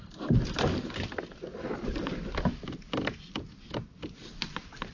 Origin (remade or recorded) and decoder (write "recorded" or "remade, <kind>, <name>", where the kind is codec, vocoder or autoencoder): recorded